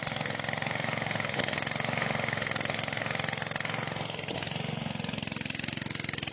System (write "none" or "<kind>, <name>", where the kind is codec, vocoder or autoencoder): none